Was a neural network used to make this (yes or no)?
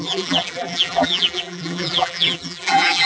yes